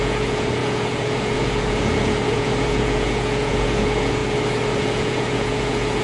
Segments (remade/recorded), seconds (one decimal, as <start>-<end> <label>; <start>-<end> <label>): 0.0-4.2 remade; 4.2-4.8 recorded; 4.8-6.0 remade